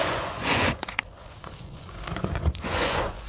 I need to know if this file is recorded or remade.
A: remade